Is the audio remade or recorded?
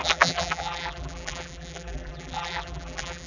remade